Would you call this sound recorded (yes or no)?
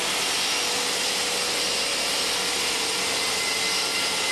yes